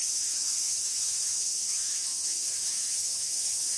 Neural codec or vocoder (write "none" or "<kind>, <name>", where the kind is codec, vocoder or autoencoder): autoencoder, DAC-VAE